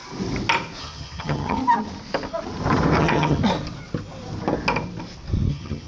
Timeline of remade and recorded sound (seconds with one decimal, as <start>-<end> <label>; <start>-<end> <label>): 0.0-0.8 recorded; 0.8-1.6 remade; 1.6-3.0 recorded; 3.0-3.4 remade; 3.4-5.5 recorded; 5.5-5.9 remade